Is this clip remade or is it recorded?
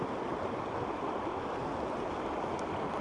recorded